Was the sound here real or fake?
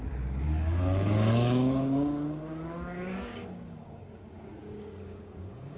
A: fake